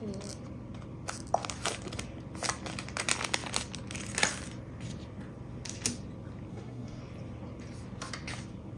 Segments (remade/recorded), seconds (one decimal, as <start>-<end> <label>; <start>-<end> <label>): 0.0-6.5 recorded; 6.5-7.0 remade; 7.0-8.8 recorded